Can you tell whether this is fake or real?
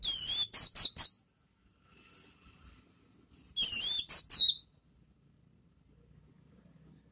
real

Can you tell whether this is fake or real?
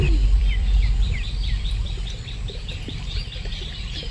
fake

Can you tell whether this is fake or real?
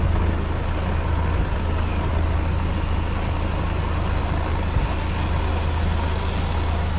real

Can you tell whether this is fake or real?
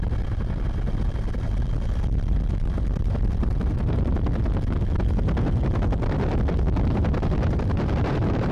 fake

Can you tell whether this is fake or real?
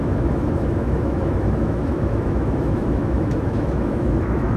fake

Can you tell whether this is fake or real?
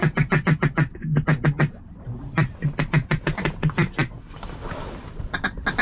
real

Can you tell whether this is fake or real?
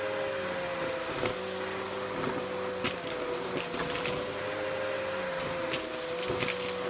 real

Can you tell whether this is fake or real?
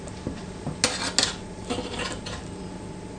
real